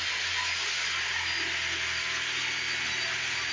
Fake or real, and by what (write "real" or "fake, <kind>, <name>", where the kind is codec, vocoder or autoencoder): real